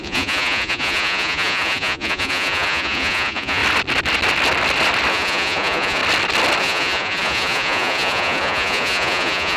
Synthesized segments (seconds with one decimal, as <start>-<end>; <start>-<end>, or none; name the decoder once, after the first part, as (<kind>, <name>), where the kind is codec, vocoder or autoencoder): 0.0-3.6 (vocoder, Vocos); 5.1-6.0; 6.6-9.6